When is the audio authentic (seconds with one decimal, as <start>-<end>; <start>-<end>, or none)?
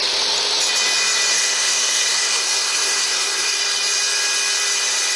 0.0-1.3; 3.6-5.2